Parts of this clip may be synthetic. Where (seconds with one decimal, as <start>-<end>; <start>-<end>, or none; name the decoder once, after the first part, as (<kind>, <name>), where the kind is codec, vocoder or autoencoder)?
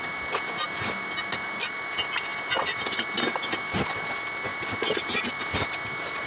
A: none